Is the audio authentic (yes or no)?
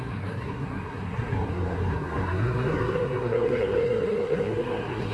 no